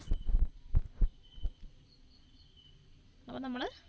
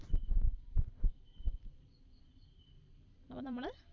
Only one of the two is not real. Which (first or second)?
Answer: second